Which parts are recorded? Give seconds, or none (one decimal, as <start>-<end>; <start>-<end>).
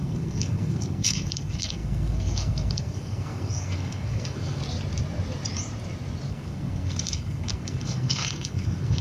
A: 4.6-6.3